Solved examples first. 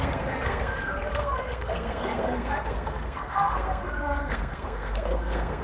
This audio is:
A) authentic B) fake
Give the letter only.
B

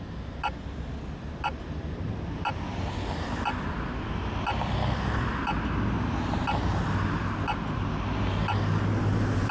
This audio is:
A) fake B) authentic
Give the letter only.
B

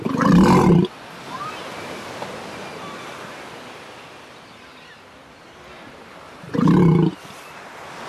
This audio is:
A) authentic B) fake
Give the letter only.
A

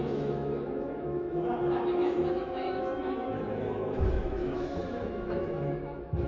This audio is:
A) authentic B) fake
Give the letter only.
B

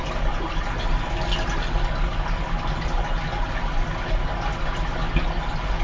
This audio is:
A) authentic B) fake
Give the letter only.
A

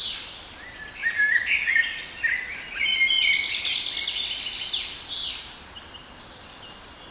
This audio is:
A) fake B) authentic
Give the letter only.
B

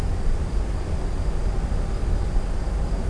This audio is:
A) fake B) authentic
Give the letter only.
B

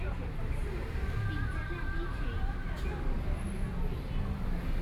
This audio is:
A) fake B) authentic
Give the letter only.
B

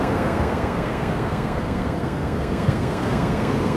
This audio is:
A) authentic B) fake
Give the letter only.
B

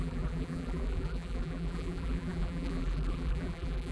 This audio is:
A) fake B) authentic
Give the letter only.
A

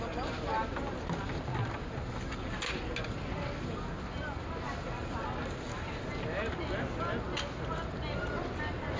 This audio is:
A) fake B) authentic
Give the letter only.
B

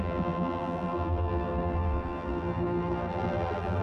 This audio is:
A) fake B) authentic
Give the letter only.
A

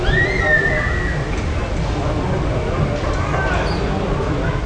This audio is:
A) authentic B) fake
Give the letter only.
A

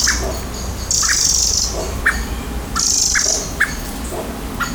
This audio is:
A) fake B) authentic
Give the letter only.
B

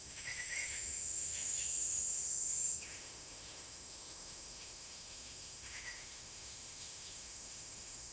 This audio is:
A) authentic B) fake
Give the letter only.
B